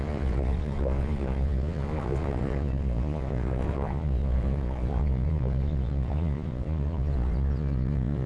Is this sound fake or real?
fake